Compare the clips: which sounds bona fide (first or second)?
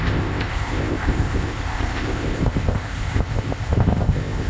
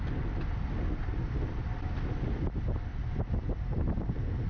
second